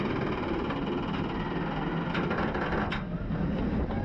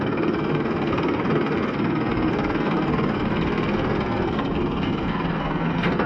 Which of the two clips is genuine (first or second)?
first